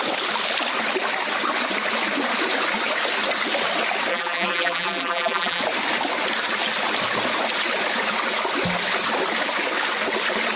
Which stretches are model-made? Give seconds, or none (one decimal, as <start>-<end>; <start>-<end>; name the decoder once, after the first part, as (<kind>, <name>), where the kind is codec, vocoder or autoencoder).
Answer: 4.1-5.6 (vocoder, BigVGAN v2)